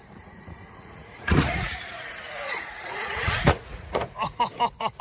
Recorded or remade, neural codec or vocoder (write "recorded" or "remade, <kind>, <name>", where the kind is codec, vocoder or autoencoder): remade, vocoder, Vocos